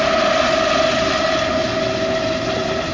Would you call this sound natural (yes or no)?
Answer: yes